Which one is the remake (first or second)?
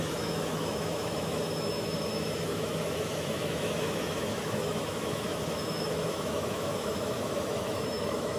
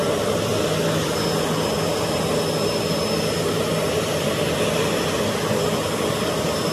first